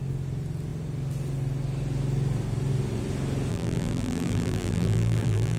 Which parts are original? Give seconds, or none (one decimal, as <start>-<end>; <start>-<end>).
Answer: 0.0-3.5